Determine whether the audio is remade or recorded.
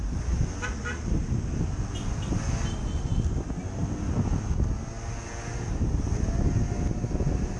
recorded